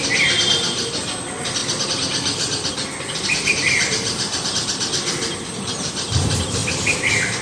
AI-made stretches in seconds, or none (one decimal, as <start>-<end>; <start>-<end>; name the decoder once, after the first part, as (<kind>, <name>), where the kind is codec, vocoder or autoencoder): none